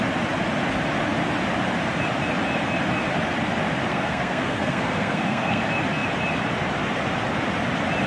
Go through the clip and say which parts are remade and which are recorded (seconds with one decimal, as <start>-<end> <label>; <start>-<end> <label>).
0.0-3.9 recorded; 3.9-5.6 remade; 5.6-8.1 recorded